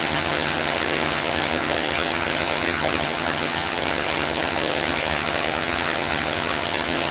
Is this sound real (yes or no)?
no